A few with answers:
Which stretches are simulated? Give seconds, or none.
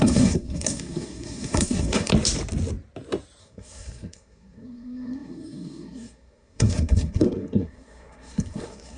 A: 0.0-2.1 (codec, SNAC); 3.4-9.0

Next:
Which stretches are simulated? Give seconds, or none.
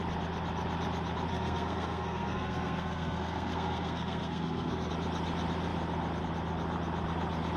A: 1.3-4.9 (codec, SNAC)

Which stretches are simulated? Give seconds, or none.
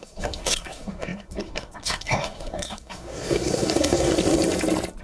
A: 0.0-4.1 (codec, SNAC)